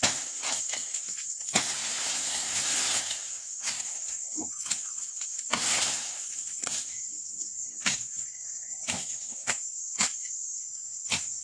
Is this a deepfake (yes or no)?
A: yes